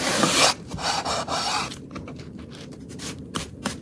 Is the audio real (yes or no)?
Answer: no